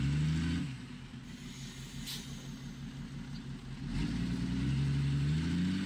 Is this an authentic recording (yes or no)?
yes